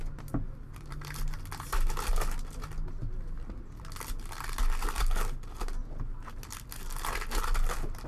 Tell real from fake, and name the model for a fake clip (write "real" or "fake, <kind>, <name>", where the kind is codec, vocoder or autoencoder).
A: real